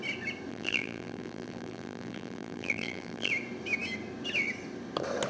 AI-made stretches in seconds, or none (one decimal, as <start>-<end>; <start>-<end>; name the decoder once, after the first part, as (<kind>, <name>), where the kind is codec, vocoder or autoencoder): 0.5-3.3 (vocoder, BigVGAN v2)